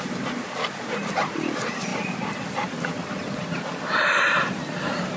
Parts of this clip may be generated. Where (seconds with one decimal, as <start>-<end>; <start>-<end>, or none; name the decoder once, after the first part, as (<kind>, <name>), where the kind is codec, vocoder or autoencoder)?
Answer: none

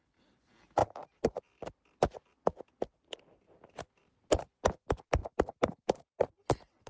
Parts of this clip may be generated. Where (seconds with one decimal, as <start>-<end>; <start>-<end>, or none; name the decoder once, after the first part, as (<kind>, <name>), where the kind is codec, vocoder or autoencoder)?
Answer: 0.8-1.4 (vocoder, BigVGAN v2); 5.2-6.3

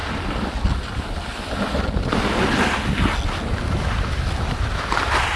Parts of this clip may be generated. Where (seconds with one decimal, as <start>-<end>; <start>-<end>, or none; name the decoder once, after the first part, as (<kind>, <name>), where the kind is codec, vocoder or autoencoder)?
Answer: 0.0-0.5 (vocoder, BigVGAN v2)

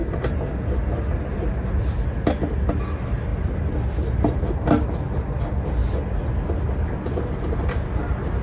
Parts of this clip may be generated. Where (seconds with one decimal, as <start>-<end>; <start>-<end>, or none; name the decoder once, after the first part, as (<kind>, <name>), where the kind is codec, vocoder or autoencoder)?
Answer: 3.3-4.4 (vocoder, BigVGAN v2)